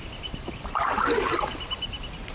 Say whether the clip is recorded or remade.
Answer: recorded